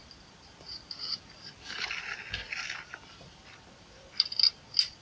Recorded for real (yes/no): yes